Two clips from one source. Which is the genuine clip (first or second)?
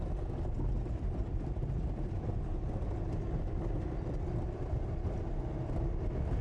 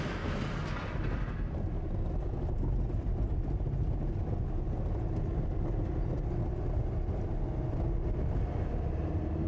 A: second